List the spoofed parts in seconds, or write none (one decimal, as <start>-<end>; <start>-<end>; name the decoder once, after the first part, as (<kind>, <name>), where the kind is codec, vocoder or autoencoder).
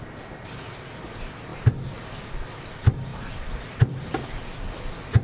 none